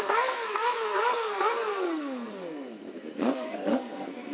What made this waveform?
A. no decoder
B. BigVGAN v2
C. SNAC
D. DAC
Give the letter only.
C